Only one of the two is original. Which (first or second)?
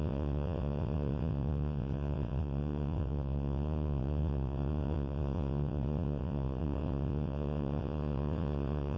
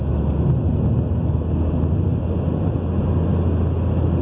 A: second